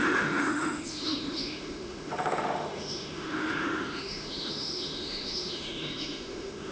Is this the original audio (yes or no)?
no